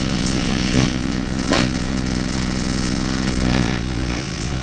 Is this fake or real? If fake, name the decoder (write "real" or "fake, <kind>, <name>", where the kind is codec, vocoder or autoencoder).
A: fake, vocoder, Vocos